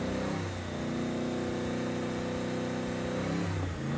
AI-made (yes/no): no